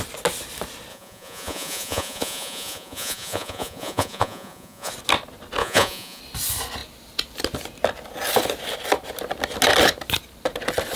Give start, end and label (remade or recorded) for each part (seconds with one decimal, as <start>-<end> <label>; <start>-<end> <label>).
0.0-0.9 recorded; 0.9-4.9 remade; 4.9-5.6 recorded; 5.6-6.2 remade; 6.2-11.0 recorded